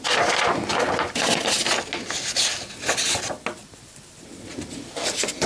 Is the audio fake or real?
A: real